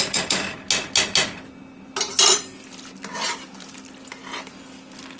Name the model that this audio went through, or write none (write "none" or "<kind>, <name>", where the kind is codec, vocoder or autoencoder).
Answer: none